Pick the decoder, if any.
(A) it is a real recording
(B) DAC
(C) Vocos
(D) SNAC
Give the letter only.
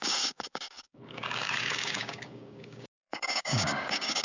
B